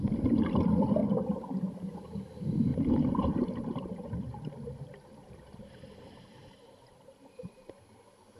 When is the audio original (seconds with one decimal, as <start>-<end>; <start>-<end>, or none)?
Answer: 0.0-1.0; 1.7-2.7; 7.7-8.4